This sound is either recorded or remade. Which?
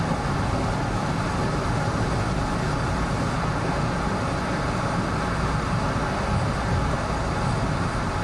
recorded